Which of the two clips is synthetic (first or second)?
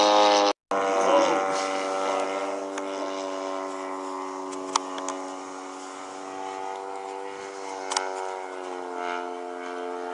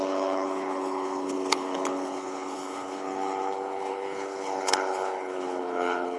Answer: second